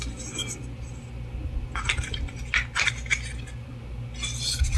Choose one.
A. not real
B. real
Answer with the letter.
B